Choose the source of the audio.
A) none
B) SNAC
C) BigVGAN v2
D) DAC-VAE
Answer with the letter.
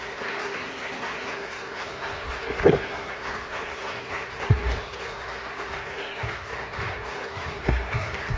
B